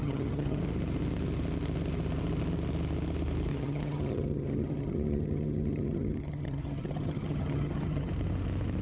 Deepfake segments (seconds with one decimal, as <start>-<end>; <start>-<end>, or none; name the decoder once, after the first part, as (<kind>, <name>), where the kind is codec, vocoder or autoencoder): 0.0-0.6 (vocoder, HiFi-GAN); 3.5-8.1